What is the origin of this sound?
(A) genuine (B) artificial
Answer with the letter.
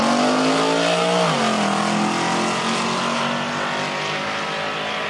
A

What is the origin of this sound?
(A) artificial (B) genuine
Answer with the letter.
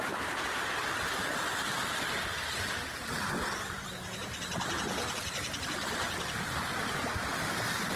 B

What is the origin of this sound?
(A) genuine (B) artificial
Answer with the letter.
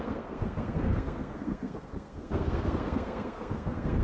B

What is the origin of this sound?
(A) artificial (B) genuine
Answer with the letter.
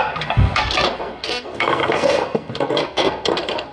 A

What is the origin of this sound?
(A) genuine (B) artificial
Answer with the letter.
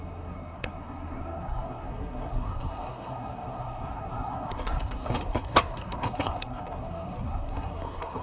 B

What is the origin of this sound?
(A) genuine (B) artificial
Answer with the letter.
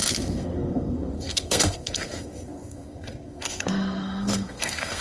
B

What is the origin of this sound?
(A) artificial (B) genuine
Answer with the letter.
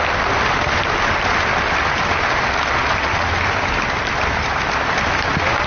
B